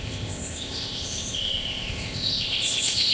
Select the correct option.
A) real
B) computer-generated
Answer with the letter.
B